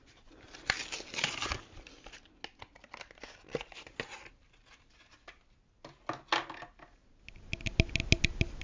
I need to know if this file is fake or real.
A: real